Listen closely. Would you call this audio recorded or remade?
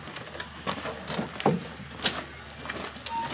recorded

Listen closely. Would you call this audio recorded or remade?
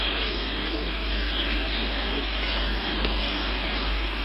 remade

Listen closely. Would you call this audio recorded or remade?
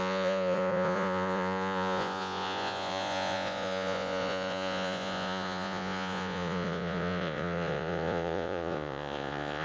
remade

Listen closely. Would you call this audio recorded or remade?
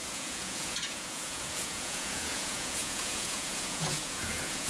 remade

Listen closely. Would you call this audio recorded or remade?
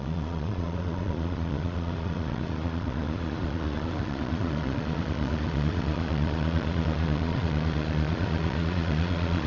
remade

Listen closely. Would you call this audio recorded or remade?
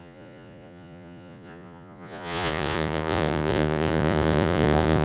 remade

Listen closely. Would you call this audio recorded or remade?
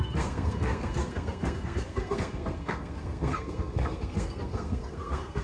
remade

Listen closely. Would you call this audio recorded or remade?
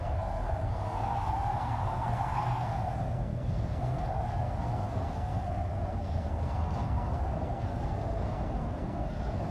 remade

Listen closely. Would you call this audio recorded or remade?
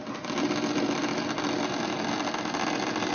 recorded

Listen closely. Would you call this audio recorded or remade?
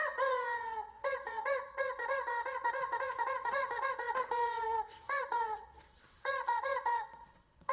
remade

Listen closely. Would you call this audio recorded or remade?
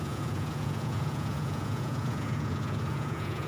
remade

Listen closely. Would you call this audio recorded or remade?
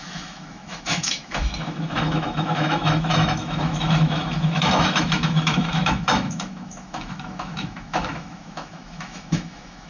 remade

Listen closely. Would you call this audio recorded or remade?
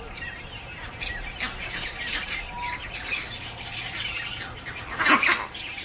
recorded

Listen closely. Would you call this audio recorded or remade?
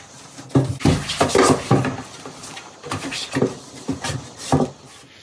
recorded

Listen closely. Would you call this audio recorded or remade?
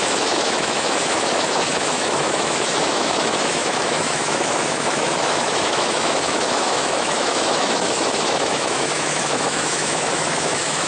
remade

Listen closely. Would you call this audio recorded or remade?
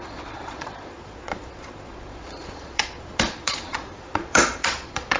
remade